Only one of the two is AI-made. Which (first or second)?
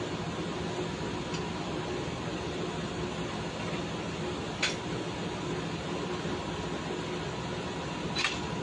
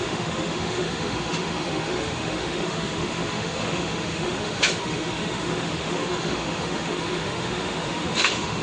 second